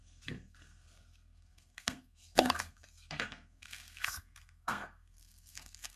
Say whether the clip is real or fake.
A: fake